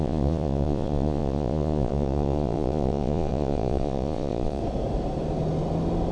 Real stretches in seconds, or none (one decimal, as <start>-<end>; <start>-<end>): 4.6-6.1